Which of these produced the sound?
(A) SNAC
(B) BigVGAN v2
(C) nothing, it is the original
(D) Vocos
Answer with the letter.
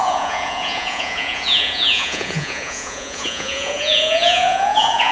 D